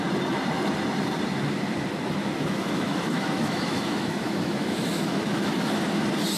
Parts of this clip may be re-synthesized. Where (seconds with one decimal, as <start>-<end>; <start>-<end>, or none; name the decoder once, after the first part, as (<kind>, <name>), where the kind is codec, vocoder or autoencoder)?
2.2-6.0 (autoencoder, DAC-VAE)